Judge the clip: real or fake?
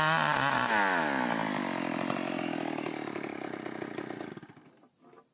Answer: real